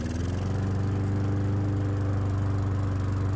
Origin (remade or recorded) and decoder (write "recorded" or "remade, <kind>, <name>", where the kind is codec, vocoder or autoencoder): recorded